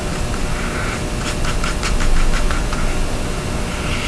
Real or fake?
real